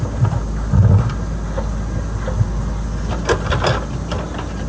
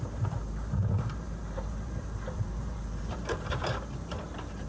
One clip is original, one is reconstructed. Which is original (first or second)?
first